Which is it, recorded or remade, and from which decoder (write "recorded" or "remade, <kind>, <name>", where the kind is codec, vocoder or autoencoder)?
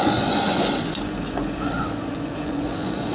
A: remade, vocoder, Vocos